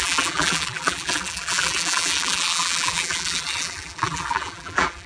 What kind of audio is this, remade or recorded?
remade